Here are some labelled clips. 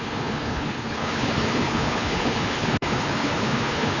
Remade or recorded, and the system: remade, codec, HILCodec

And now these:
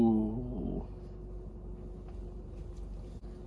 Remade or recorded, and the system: recorded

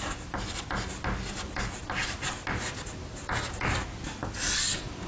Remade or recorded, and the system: recorded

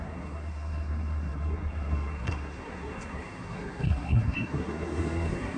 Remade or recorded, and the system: remade, codec, SNAC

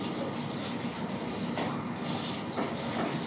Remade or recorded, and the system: recorded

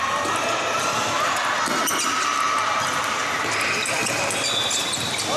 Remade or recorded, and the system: recorded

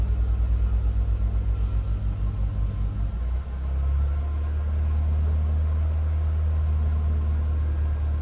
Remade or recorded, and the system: recorded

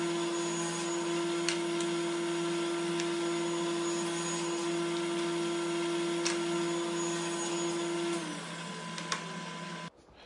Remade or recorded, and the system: recorded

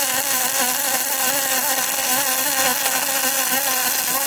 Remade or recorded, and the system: recorded